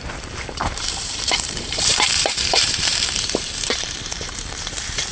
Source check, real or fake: fake